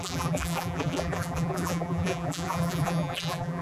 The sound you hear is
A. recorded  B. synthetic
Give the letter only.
B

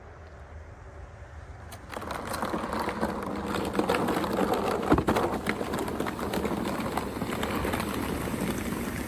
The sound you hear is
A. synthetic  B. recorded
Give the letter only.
B